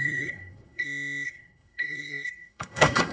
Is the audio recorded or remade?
remade